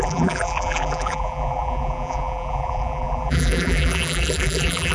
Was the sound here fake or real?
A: fake